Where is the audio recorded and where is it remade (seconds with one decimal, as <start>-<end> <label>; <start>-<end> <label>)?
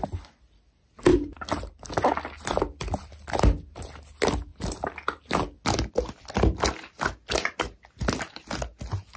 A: 0.0-9.2 recorded